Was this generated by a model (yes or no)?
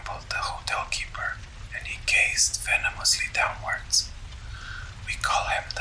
no